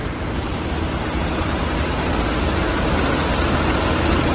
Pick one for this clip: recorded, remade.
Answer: recorded